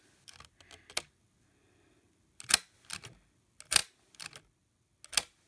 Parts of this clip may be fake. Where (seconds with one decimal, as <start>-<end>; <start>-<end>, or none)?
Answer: none